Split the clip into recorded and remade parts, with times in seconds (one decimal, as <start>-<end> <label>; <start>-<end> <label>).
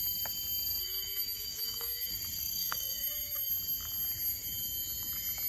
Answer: 0.0-0.8 recorded; 0.8-2.1 remade; 2.1-2.6 recorded; 2.6-3.5 remade; 3.5-5.5 recorded